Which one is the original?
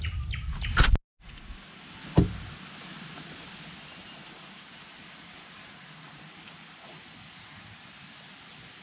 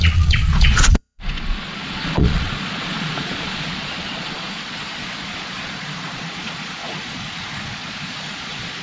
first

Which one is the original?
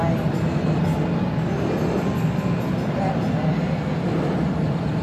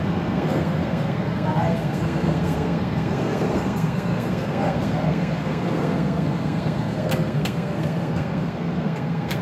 first